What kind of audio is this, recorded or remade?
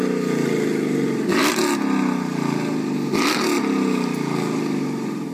recorded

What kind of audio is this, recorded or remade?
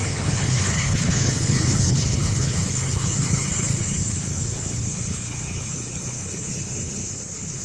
remade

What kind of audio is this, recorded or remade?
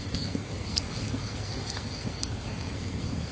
remade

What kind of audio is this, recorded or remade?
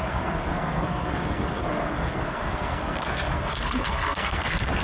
remade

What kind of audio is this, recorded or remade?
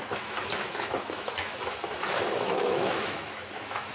remade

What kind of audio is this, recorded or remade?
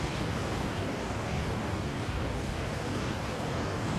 remade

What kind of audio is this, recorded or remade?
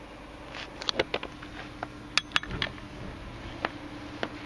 recorded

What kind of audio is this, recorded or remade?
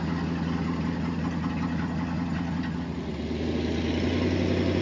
recorded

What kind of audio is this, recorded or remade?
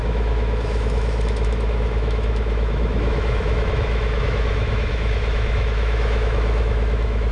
remade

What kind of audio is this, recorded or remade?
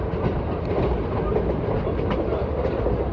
recorded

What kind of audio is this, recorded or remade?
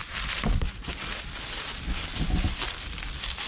recorded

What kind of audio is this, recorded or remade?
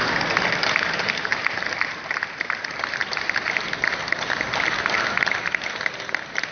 recorded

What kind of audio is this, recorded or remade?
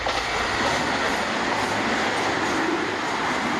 recorded